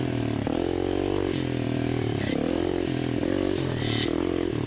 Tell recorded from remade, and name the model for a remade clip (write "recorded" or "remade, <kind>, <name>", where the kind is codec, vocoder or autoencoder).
remade, vocoder, BigVGAN v2